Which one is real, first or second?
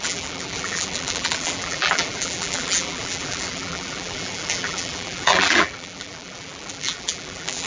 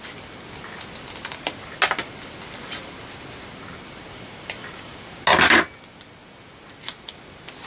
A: second